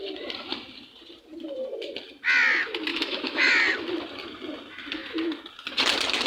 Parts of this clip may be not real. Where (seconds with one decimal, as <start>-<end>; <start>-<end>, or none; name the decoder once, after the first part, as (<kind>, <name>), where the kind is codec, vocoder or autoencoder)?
2.9-3.5 (autoencoder, DAC-VAE)